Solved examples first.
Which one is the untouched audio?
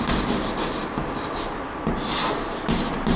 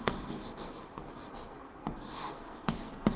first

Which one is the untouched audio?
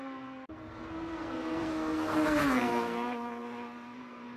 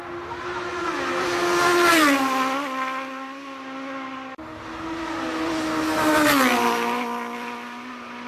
second